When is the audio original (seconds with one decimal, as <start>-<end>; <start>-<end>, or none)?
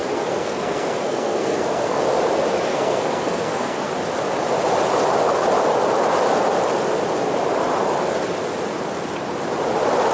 2.0-2.7; 3.9-10.1